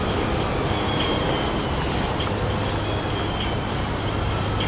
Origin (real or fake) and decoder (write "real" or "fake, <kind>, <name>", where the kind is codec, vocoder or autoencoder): real